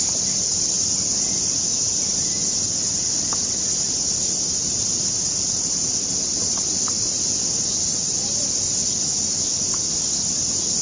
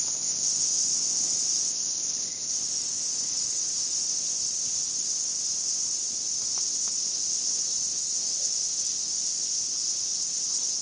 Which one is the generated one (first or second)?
second